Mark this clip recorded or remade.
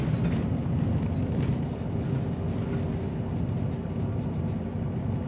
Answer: recorded